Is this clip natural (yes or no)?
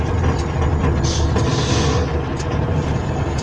yes